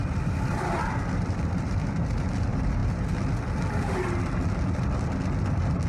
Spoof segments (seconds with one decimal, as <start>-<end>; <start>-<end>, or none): 0.0-2.8